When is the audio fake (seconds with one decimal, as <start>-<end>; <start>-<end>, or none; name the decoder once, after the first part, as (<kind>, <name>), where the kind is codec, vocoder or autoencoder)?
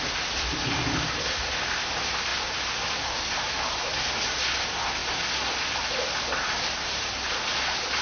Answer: none